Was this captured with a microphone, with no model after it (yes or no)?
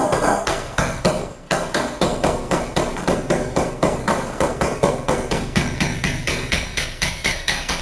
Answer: no